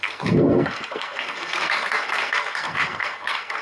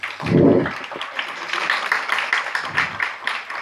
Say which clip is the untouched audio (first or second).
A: second